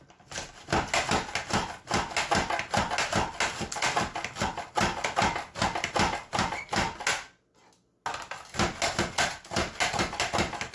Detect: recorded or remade recorded